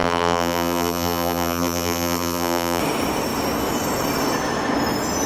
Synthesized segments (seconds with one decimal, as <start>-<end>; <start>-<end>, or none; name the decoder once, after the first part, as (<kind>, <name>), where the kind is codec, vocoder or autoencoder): 0.0-2.8 (vocoder, BigVGAN v2)